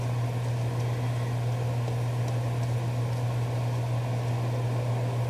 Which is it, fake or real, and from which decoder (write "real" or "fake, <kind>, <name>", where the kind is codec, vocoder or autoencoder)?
real